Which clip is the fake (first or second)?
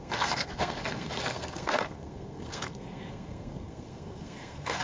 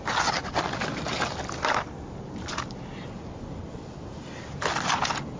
first